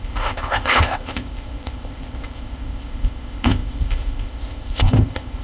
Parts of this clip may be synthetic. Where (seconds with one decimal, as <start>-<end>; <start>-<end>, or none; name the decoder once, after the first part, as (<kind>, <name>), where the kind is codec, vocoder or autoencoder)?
0.0-5.4 (codec, ZipCodec)